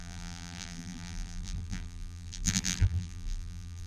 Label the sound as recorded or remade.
remade